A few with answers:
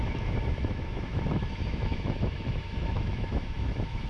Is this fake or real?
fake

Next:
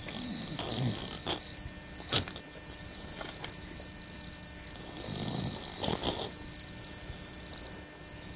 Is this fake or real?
real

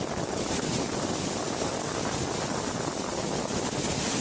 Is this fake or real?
real